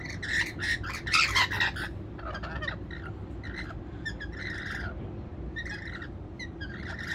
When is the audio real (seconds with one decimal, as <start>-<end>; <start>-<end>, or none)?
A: 0.0-7.1